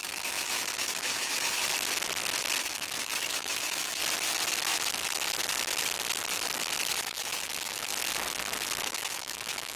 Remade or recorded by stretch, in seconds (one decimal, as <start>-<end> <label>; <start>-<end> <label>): 0.0-1.6 remade; 1.6-2.6 recorded; 2.6-4.0 remade; 4.0-7.0 recorded; 7.0-7.9 remade; 7.9-8.9 recorded; 8.9-9.8 remade